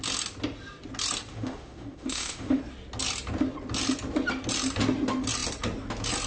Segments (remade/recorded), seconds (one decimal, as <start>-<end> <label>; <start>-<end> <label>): 0.0-1.3 recorded; 1.3-2.6 remade; 2.6-6.3 recorded